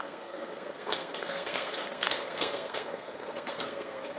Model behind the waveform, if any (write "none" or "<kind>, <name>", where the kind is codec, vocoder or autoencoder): codec, SNAC